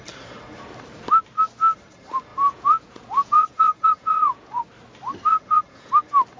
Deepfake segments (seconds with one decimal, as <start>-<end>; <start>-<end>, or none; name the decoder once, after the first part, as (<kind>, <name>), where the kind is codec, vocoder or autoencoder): 2.3-4.6 (vocoder, Vocos); 5.3-5.9